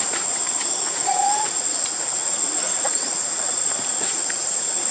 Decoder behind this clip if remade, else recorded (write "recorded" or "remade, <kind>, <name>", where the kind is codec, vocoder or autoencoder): remade, vocoder, Vocos